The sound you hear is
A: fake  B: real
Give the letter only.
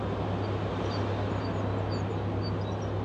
B